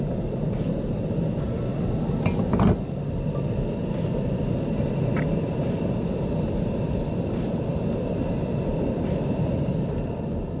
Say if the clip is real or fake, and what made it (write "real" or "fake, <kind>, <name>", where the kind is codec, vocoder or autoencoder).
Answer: real